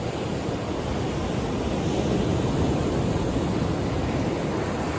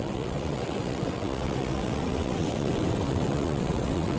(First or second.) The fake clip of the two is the second